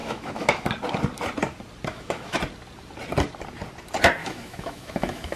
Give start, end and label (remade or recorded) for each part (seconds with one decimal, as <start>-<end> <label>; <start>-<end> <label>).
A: 0.0-0.7 remade; 0.7-1.9 recorded; 1.9-2.4 remade; 2.4-4.2 recorded; 4.2-5.4 remade